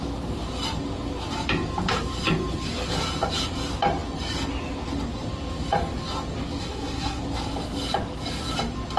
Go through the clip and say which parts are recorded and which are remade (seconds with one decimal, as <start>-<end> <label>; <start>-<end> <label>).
0.0-6.6 recorded; 6.6-7.2 remade; 7.2-9.0 recorded